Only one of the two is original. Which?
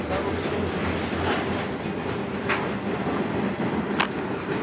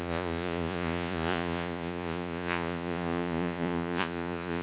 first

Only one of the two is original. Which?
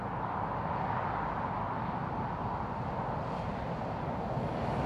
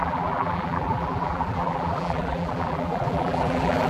first